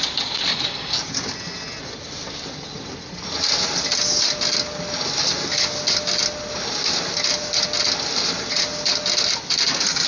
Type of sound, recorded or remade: recorded